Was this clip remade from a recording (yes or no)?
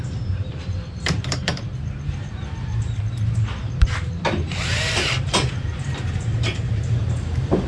yes